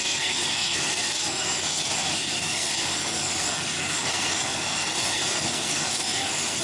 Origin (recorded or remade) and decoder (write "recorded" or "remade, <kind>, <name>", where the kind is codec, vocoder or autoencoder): remade, codec, SNAC